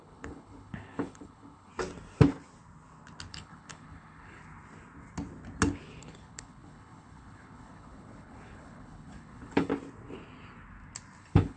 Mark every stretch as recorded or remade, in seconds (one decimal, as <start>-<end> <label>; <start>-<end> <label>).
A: 0.0-1.7 remade; 1.7-3.3 recorded; 3.3-4.4 remade; 4.4-6.0 recorded; 6.0-9.7 remade; 9.7-11.2 recorded; 11.2-11.6 remade

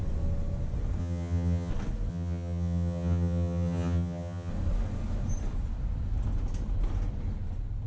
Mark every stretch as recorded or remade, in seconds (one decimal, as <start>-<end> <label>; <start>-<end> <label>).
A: 0.0-1.0 recorded; 1.0-1.7 remade; 1.7-2.1 recorded; 2.1-4.5 remade; 4.5-7.9 recorded

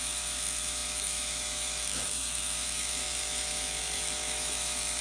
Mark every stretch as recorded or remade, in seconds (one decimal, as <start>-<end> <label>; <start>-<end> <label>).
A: 0.0-5.0 remade

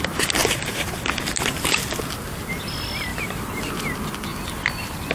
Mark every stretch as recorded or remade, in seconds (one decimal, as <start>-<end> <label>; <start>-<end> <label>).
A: 0.0-0.4 recorded; 0.4-2.0 remade; 2.0-3.1 recorded; 3.1-3.7 remade; 3.7-5.1 recorded

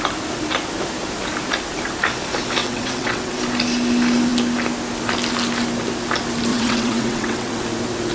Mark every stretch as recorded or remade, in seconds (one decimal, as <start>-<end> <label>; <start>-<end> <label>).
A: 0.0-2.6 recorded; 2.6-3.4 remade; 3.4-6.5 recorded; 6.5-7.6 remade; 7.6-8.1 recorded

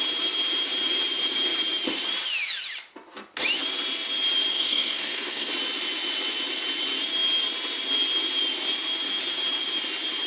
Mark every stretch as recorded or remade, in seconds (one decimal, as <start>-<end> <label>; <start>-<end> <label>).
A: 0.0-4.5 recorded; 4.5-5.5 remade; 5.5-10.3 recorded

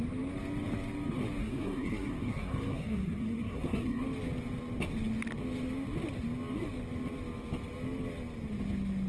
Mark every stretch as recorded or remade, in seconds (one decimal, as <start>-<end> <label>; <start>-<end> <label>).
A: 0.0-1.4 recorded; 1.4-4.0 remade; 4.0-9.1 recorded

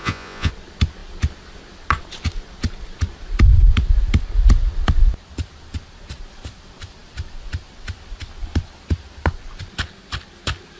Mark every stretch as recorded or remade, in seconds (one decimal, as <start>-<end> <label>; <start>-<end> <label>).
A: 0.0-0.5 remade; 0.5-10.8 recorded